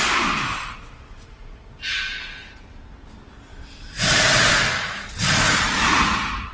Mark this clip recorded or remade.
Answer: recorded